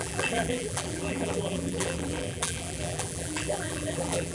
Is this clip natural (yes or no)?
no